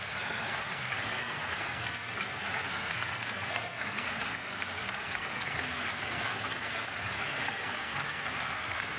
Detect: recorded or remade remade